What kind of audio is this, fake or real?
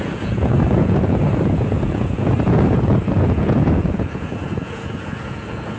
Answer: fake